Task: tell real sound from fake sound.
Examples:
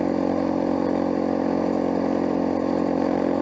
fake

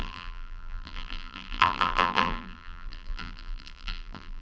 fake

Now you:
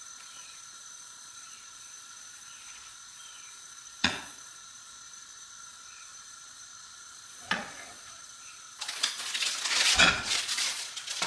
fake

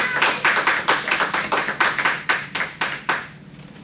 real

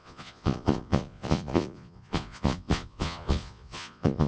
fake